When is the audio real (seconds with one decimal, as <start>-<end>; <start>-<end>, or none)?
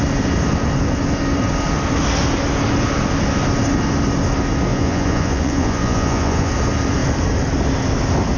0.0-4.7; 6.5-8.4